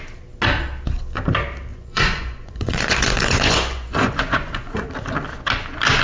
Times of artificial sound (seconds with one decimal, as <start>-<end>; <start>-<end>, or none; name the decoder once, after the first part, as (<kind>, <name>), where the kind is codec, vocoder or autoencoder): 1.7-4.9 (vocoder, Vocos)